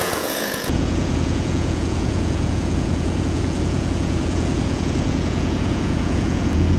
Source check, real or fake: fake